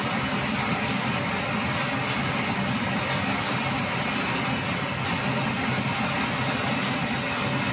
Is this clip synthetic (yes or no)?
no